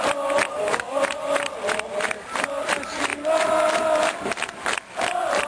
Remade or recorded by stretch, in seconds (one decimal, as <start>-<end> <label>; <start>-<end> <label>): 0.0-0.5 recorded; 0.5-1.0 remade; 1.0-5.5 recorded